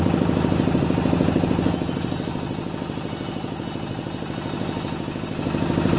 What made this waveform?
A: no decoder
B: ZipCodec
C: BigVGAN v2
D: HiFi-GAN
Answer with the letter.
A